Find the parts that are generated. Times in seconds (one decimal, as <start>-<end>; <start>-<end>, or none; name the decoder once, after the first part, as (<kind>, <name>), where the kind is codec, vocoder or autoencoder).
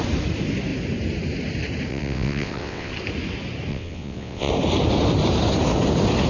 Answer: 1.9-2.9 (vocoder, WaveNeXt); 3.7-4.5